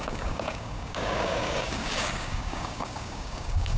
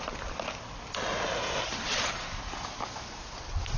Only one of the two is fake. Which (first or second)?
first